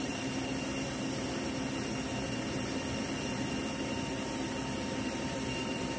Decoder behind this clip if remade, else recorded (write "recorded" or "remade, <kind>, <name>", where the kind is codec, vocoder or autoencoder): recorded